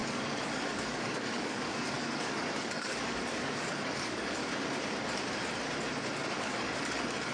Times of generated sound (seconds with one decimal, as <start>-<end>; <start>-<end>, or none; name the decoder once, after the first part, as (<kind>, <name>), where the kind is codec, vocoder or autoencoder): 0.0-4.4 (codec, DAC); 6.4-7.3